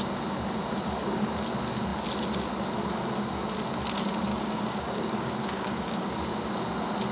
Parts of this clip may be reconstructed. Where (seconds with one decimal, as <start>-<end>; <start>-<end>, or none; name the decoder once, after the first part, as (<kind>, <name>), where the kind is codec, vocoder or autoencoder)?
4.3-6.1 (codec, DAC)